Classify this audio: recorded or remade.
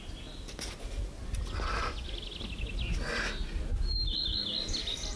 recorded